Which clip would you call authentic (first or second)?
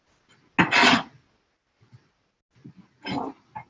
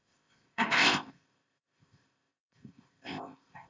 first